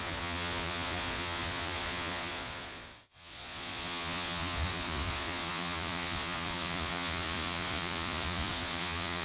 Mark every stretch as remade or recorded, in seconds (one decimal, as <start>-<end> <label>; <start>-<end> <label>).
0.0-9.2 remade